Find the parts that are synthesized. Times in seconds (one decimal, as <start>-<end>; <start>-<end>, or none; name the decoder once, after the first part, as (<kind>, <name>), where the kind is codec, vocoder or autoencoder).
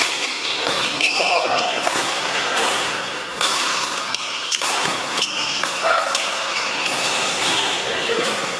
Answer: 0.0-8.6 (codec, SNAC)